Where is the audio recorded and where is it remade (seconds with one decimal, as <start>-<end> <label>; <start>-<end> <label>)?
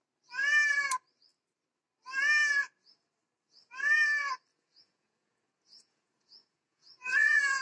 0.0-4.5 recorded; 4.5-7.6 remade